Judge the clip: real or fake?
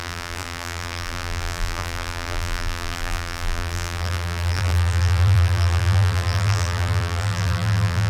fake